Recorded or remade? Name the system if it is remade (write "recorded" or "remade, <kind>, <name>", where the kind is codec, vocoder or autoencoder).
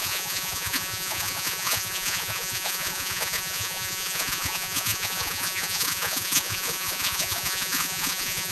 remade, vocoder, Vocos